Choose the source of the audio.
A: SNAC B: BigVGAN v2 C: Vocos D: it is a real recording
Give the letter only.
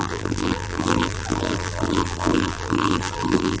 B